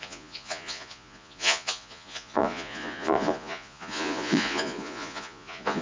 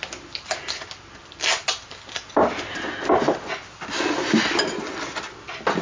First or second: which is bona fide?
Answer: second